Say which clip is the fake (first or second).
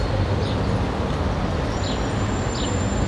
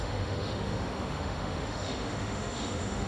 second